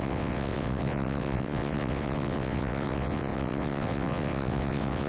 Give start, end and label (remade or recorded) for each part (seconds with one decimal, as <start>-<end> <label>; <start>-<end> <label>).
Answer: 0.0-5.1 remade

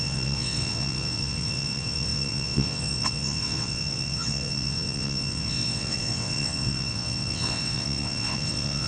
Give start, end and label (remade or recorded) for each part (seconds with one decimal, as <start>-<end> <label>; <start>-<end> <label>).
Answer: 0.0-8.9 remade

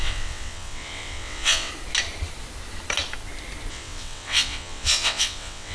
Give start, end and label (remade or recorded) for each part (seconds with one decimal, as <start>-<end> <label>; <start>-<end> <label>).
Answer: 0.0-1.7 remade; 1.7-3.7 recorded; 3.7-5.7 remade